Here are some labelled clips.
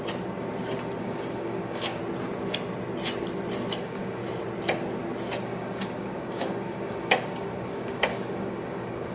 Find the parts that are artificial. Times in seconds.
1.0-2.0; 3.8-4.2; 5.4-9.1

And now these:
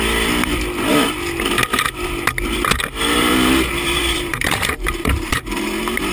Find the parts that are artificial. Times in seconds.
3.2-6.1